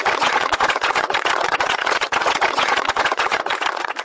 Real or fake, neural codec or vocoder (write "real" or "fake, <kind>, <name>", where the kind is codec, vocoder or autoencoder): fake, vocoder, WaveNeXt